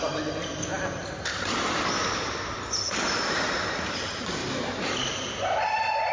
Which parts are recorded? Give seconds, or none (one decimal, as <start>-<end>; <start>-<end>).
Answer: 0.0-6.1